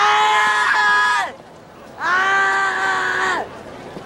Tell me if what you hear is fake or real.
real